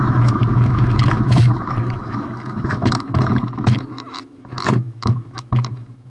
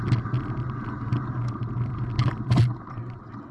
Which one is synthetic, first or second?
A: first